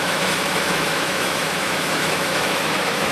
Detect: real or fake fake